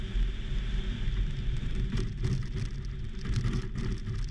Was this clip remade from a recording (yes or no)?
no